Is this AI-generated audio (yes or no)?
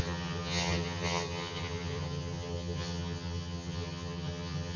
yes